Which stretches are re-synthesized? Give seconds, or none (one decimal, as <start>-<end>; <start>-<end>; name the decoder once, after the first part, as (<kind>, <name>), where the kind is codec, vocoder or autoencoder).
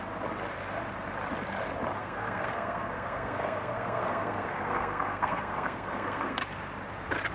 2.0-6.4 (codec, SNAC)